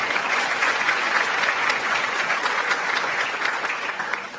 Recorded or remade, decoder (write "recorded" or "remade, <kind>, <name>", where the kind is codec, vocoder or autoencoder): remade, vocoder, Vocos